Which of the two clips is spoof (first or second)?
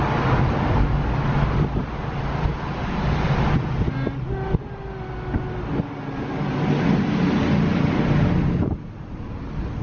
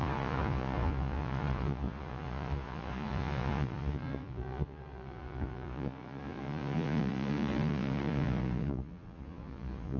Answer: second